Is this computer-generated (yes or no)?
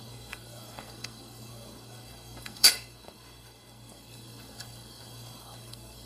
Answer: yes